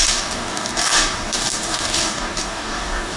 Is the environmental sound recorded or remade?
remade